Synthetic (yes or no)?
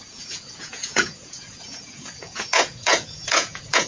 yes